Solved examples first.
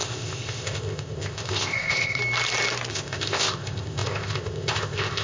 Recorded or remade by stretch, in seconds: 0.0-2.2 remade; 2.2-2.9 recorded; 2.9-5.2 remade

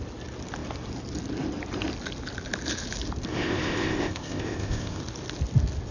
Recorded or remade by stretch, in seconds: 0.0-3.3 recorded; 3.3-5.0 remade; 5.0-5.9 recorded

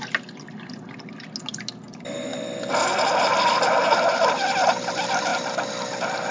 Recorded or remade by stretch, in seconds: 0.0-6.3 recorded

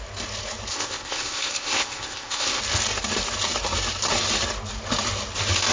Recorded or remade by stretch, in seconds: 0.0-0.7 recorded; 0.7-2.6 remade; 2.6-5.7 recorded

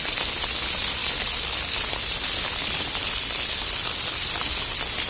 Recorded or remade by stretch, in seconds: 0.0-5.1 recorded